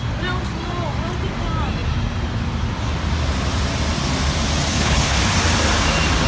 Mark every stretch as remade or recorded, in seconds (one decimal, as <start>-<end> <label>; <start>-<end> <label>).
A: 0.0-4.7 recorded; 4.7-5.2 remade; 5.2-6.3 recorded

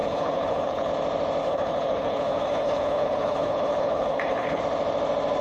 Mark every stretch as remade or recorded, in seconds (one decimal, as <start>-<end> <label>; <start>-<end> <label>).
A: 0.0-0.9 remade; 0.9-1.4 recorded; 1.4-4.6 remade; 4.6-5.4 recorded

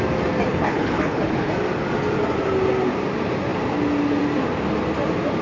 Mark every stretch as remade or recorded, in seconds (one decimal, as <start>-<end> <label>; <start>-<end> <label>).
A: 0.0-0.5 recorded; 0.5-1.5 remade; 1.5-5.4 recorded

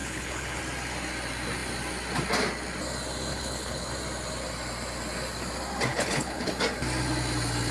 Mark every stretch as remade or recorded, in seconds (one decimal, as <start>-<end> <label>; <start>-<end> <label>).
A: 0.0-0.6 remade; 0.6-3.3 recorded; 3.3-3.9 remade; 3.9-5.9 recorded; 5.9-6.5 remade; 6.5-7.7 recorded

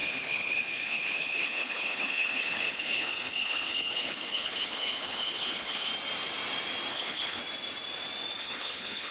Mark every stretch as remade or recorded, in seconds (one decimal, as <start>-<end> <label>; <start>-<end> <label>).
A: 0.0-5.9 remade; 5.9-6.9 recorded; 6.9-7.4 remade; 7.4-8.4 recorded; 8.4-9.1 remade

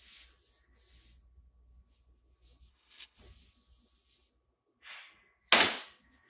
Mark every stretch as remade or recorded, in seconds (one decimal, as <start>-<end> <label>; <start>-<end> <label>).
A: 0.0-2.7 recorded; 2.7-3.2 remade; 3.2-6.3 recorded

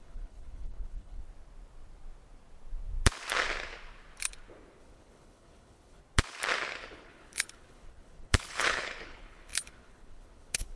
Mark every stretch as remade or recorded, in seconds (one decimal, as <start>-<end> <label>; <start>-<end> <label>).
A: 0.0-1.2 remade; 1.2-4.8 recorded; 4.8-6.0 remade; 6.0-6.8 recorded; 6.8-10.8 remade